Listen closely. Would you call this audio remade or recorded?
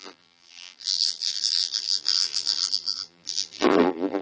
remade